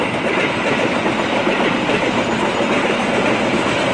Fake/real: real